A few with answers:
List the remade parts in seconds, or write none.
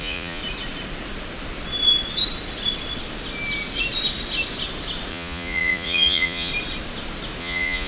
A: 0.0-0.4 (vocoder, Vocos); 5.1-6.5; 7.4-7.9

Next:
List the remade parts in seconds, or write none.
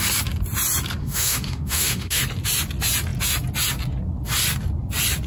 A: 1.0-2.2 (autoencoder, DAC-VAE)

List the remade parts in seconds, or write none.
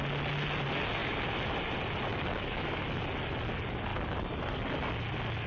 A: 2.1-2.8 (codec, DAC)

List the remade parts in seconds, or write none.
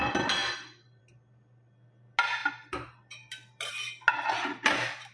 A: 0.4-1.0 (vocoder, BigVGAN v2); 2.4-3.7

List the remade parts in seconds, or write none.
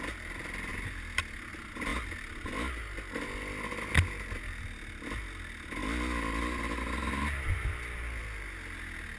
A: none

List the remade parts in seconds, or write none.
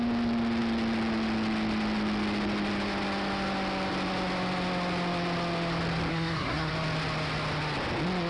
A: 6.1-6.7 (codec, SNAC)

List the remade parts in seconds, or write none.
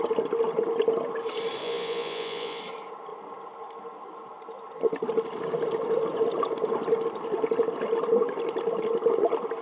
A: 1.6-2.6 (vocoder, Vocos)